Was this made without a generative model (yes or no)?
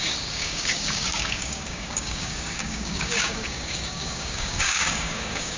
no